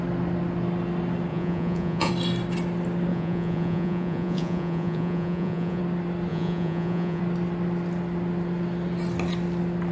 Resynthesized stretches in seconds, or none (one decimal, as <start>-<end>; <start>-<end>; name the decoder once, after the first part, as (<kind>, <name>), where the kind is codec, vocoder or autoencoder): 1.3-2.1 (vocoder, Vocos); 3.1-5.8; 6.3-7.2